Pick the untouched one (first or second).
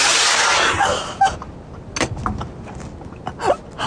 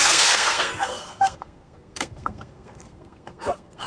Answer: first